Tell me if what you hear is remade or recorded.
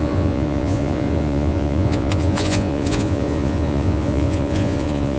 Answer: remade